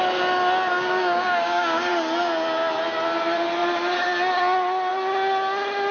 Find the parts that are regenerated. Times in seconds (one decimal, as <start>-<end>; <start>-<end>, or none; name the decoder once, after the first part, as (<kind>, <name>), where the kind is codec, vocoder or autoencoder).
0.7-1.9 (codec, DAC)